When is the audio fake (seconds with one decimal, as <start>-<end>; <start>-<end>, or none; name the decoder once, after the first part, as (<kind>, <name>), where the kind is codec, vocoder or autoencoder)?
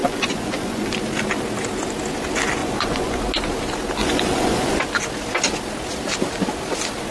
0.0-0.9 (vocoder, Vocos); 2.6-3.2; 4.0-4.8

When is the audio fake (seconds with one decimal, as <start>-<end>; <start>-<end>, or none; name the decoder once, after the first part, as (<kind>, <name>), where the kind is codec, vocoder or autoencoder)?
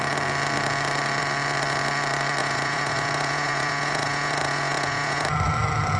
2.4-5.3 (vocoder, Vocos)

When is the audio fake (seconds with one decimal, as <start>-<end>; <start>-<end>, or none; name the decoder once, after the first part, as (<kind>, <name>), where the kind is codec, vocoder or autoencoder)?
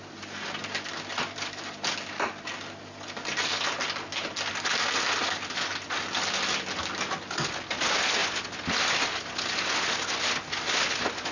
none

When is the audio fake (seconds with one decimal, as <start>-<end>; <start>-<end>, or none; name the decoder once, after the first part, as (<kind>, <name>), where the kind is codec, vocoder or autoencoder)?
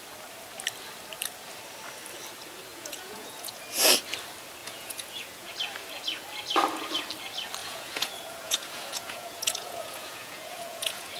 2.7-3.6 (vocoder, Vocos); 4.6-5.5; 7.6-11.2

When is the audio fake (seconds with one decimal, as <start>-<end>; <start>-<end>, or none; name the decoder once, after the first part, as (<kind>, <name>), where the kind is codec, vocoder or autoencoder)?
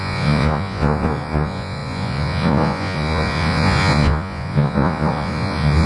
0.0-5.9 (vocoder, Vocos)